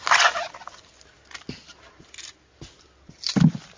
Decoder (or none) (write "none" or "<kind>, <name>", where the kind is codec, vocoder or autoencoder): none